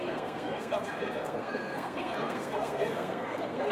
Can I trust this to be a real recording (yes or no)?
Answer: no